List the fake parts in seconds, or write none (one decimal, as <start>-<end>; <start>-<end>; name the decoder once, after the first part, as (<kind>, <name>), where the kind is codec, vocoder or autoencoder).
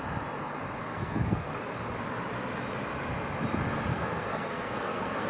0.8-1.5 (codec, SNAC); 3.9-5.3